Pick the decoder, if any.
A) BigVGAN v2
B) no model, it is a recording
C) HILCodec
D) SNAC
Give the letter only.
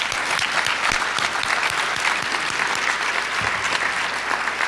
B